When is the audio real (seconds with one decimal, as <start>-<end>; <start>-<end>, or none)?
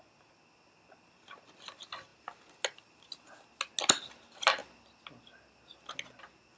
0.0-6.6